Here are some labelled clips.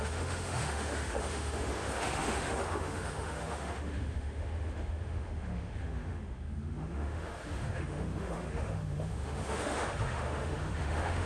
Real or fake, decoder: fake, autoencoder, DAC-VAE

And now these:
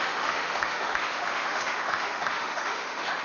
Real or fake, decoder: fake, autoencoder, DAC-VAE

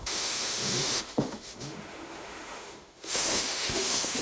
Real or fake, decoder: fake, autoencoder, DAC-VAE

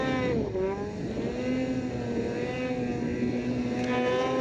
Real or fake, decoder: real